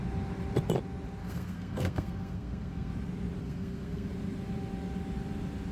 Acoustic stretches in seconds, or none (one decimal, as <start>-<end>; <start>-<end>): 0.0-1.2; 2.9-3.4; 4.1-5.7